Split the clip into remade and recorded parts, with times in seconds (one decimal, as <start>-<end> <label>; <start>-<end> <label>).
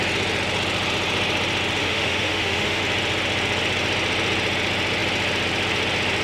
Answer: 0.0-1.8 recorded; 1.8-2.8 remade; 2.8-6.2 recorded